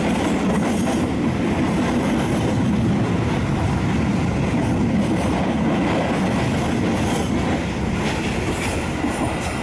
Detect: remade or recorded recorded